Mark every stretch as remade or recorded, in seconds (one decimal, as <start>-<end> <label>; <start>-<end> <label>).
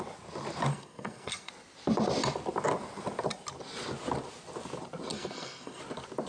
0.0-0.7 recorded; 0.7-1.5 remade; 1.5-5.1 recorded; 5.1-5.8 remade; 5.8-6.3 recorded